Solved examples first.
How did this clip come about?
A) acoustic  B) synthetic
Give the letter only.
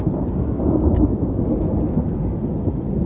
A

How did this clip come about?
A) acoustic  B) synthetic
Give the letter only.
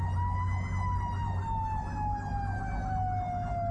A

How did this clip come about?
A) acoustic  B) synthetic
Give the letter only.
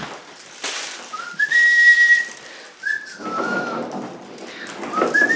A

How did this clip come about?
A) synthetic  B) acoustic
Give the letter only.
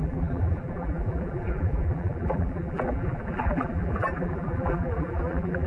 A